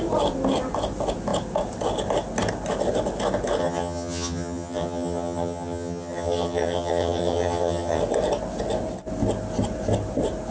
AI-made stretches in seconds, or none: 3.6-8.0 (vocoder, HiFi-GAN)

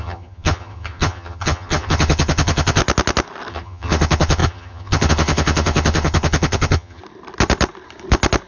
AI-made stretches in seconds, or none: 0.0-2.8 (vocoder, HiFi-GAN); 3.5-7.0

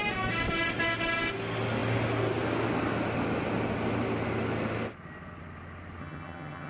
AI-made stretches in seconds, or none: 6.0-6.7 (vocoder, HiFi-GAN)

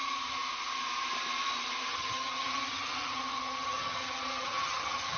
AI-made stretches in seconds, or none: 1.9-5.2 (vocoder, HiFi-GAN)

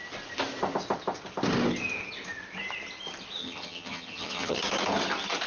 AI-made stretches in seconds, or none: 3.4-4.6 (vocoder, HiFi-GAN)

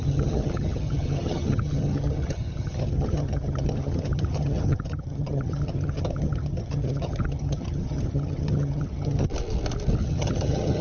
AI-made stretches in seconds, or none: 0.0-9.3 (vocoder, HiFi-GAN); 10.0-10.8

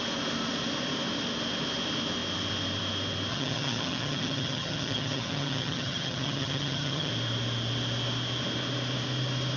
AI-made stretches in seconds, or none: 3.3-7.1 (vocoder, HiFi-GAN)

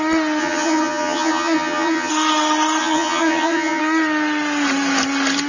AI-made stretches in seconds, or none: 0.4-2.1 (vocoder, HiFi-GAN); 2.8-3.8